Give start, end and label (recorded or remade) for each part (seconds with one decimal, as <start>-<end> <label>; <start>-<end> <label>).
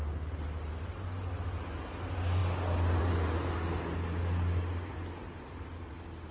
0.0-6.3 recorded